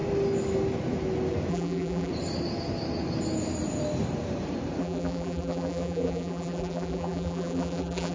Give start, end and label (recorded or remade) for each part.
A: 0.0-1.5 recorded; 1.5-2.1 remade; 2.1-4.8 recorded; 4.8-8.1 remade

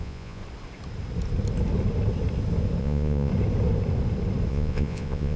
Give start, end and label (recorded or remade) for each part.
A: 0.0-0.4 remade; 0.4-2.8 recorded; 2.8-3.3 remade; 3.3-4.5 recorded; 4.5-5.4 remade

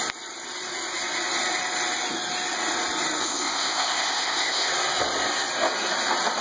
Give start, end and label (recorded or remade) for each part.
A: 0.0-3.2 recorded; 3.2-4.7 remade; 4.7-6.4 recorded

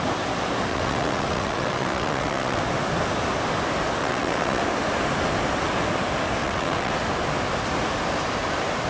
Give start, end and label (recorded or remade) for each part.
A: 0.0-0.7 recorded; 0.7-2.6 remade; 2.6-4.0 recorded; 4.0-4.6 remade; 4.6-6.4 recorded; 6.4-6.9 remade; 6.9-8.9 recorded